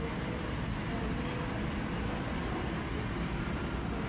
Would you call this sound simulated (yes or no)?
no